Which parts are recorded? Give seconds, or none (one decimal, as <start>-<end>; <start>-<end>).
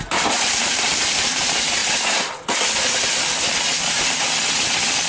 1.8-5.1